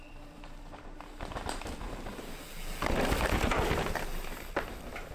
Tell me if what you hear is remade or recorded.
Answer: recorded